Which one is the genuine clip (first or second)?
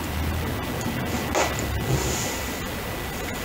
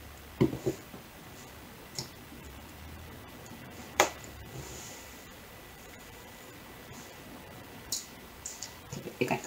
first